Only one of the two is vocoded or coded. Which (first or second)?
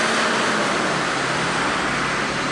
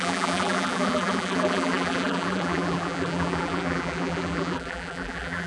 second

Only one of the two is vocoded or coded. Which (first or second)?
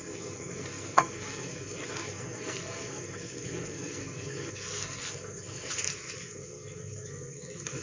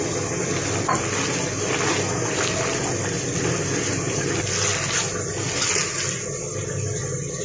first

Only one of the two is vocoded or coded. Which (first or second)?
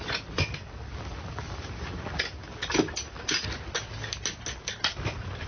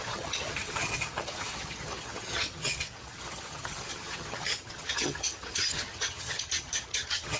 second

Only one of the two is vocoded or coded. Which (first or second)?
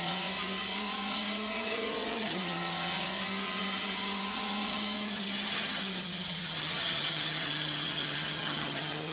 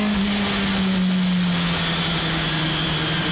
first